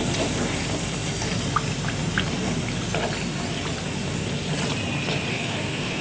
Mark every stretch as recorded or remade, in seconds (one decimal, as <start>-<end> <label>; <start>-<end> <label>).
0.0-5.3 recorded; 5.3-6.0 remade